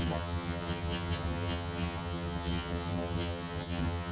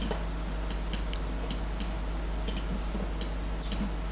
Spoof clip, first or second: first